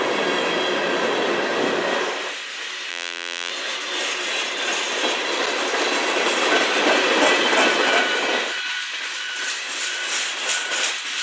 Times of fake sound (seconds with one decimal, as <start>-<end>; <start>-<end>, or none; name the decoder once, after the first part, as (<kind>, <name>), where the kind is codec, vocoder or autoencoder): 2.9-3.5 (vocoder, BigVGAN v2)

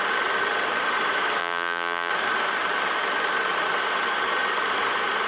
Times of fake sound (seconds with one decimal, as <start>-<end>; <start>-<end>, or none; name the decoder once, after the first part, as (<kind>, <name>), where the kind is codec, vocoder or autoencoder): 1.4-2.1 (vocoder, BigVGAN v2)

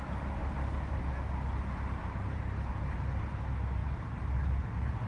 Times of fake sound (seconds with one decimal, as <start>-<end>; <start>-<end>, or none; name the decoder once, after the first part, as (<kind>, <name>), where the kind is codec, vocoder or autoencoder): 0.4-1.0 (vocoder, BigVGAN v2); 2.0-3.2; 3.8-5.1

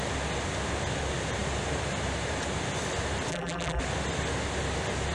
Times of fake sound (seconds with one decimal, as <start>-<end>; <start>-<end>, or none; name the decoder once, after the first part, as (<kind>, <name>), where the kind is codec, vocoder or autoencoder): 3.3-3.8 (vocoder, BigVGAN v2)

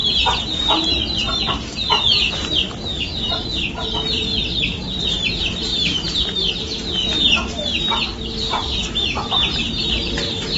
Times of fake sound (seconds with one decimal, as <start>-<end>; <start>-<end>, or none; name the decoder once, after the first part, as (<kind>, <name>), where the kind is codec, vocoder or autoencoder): 2.3-4.3 (vocoder, BigVGAN v2); 5.0-10.6